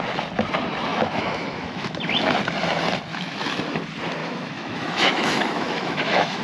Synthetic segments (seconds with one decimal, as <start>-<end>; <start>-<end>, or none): 0.9-2.0; 3.1-3.6; 4.2-6.4